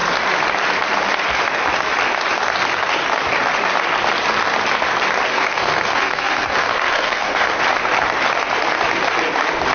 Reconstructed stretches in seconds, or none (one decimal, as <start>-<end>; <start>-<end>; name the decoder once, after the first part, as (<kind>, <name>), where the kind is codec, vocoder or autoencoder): 5.3-7.5 (codec, SNAC)